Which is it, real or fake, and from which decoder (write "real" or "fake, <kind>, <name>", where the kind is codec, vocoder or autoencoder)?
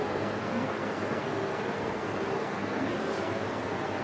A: fake, codec, SNAC